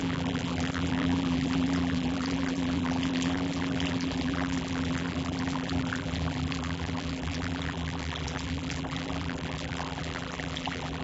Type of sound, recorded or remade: remade